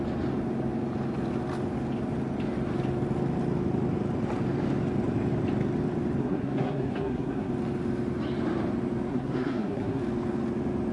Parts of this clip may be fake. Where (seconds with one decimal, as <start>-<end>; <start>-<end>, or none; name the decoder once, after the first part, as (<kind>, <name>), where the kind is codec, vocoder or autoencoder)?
6.2-7.5 (codec, SNAC); 9.1-10.0